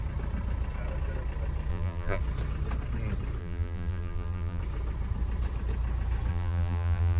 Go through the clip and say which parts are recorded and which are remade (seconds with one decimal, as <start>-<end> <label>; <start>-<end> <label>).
0.0-1.7 recorded; 1.7-2.2 remade; 2.2-3.4 recorded; 3.4-4.6 remade; 4.6-6.3 recorded; 6.3-7.2 remade